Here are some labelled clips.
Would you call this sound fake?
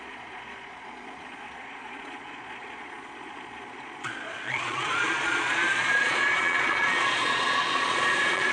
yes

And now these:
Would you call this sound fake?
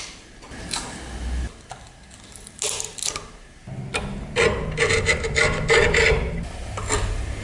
no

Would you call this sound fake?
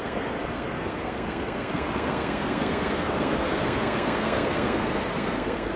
yes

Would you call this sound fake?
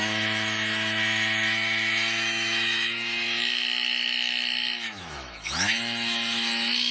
yes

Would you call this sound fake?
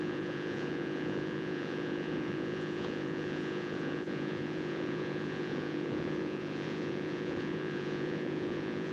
yes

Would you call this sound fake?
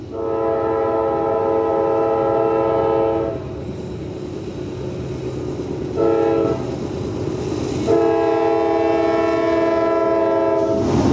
no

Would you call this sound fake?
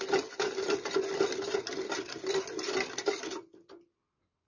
no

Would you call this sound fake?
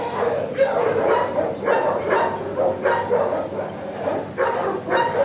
no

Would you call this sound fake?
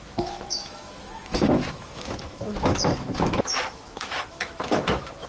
yes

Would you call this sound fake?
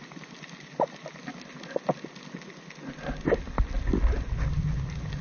no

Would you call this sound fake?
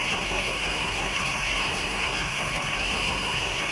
yes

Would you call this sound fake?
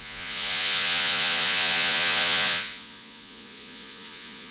yes